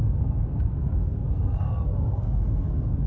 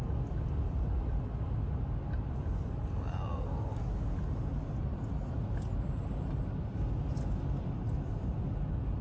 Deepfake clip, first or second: first